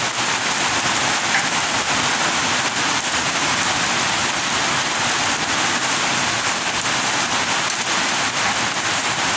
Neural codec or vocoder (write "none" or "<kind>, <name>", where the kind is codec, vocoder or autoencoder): none